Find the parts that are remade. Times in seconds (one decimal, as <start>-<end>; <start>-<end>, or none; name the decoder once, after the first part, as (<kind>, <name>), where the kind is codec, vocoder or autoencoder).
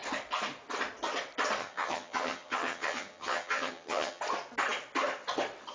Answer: 1.6-4.2 (vocoder, HiFi-GAN)